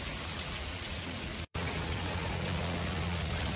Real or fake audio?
fake